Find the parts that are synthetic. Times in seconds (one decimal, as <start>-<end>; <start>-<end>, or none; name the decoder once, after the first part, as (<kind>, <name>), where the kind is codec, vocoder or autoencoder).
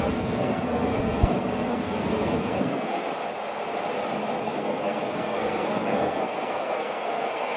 0.0-3.0 (codec, SNAC); 4.4-7.6